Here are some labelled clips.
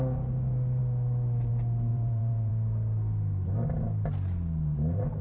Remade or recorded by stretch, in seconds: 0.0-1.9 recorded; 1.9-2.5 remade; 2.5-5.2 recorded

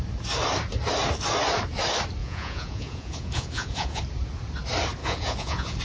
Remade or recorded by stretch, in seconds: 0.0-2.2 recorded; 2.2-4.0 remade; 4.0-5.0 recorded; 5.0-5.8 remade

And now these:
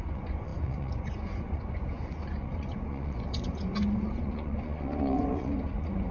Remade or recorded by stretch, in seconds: 0.0-6.1 remade